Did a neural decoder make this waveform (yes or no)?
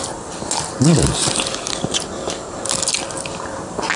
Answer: no